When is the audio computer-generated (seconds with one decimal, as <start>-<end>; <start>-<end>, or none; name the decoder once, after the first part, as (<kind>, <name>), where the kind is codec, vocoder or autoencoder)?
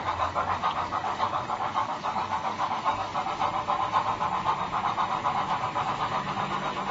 0.0-3.1 (codec, DAC)